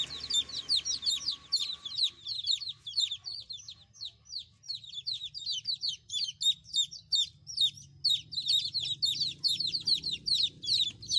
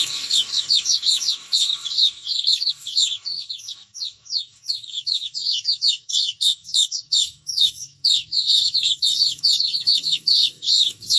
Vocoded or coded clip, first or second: second